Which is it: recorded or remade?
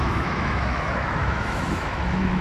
remade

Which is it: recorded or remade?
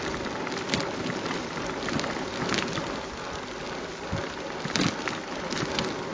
recorded